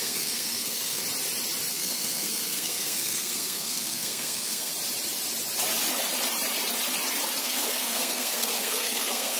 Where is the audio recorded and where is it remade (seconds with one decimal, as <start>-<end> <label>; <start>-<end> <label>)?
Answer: 0.0-1.0 remade; 1.0-1.7 recorded; 1.7-4.7 remade; 4.7-7.4 recorded; 7.4-9.4 remade